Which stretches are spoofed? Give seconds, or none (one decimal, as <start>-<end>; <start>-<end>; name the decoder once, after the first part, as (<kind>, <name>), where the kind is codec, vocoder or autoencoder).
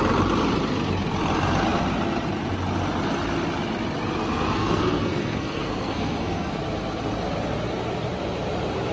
4.2-6.6 (codec, SNAC)